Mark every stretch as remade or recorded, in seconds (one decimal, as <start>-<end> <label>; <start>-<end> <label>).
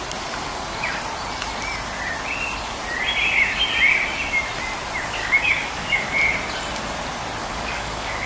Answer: 0.0-0.5 recorded; 0.5-1.0 remade; 1.0-5.2 recorded; 5.2-6.1 remade; 6.1-7.4 recorded; 7.4-8.3 remade